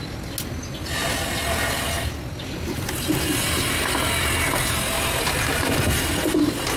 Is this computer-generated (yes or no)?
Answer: no